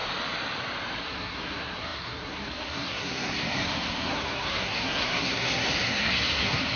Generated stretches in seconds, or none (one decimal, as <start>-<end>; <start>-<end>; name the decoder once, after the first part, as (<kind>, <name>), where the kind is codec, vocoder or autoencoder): 1.0-6.8 (codec, SNAC)